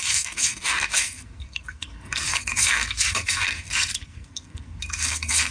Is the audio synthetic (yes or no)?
yes